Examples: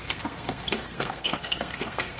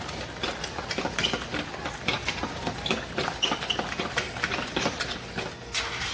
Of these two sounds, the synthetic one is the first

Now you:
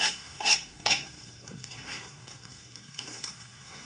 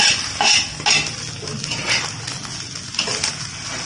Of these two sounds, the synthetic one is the first